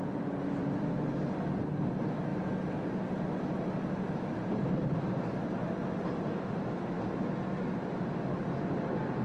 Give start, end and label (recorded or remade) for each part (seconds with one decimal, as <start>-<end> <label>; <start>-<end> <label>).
0.0-0.6 recorded; 0.6-1.4 remade; 1.4-9.2 recorded